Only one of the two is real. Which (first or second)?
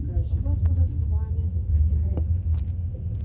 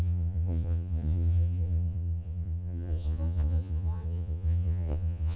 first